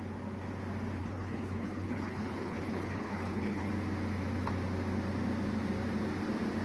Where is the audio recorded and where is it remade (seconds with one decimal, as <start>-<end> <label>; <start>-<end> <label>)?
0.0-1.0 recorded; 1.0-3.7 remade; 3.7-6.6 recorded